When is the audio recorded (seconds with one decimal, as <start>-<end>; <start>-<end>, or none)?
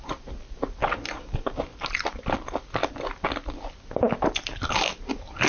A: 0.0-5.5